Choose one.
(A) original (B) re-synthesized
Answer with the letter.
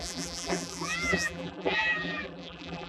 B